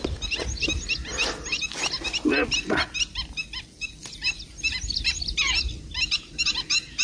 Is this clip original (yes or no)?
yes